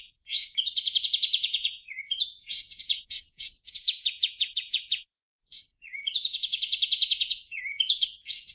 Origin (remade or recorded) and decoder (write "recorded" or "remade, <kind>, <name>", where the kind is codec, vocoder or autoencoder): remade, vocoder, Vocos